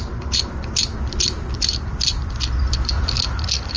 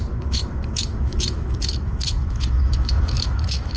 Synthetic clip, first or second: second